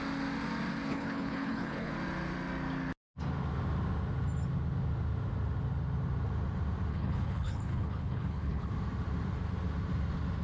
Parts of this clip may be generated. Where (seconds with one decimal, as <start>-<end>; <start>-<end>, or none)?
0.9-1.9; 6.9-8.7